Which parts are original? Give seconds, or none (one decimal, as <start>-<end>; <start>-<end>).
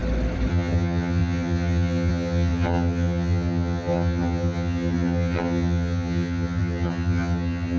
0.0-0.5